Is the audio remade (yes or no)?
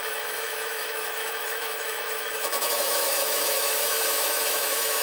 yes